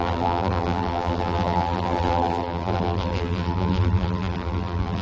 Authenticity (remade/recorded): remade